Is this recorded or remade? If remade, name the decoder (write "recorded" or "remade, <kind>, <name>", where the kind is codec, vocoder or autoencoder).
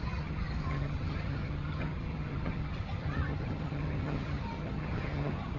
remade, vocoder, HiFi-GAN